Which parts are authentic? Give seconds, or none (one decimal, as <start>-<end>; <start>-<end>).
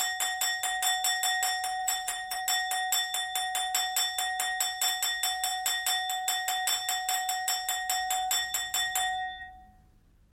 0.0-1.8; 2.4-10.3